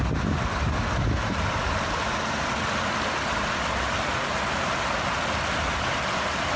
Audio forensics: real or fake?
real